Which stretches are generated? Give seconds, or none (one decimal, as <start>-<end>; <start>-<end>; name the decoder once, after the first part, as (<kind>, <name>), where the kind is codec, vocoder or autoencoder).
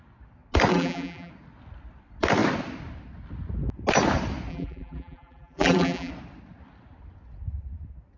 0.7-1.3 (vocoder, BigVGAN v2); 4.5-6.1